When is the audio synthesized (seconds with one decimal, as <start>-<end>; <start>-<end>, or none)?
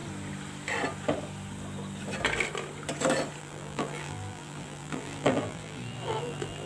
3.4-6.7